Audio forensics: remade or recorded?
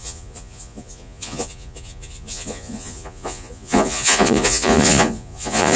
remade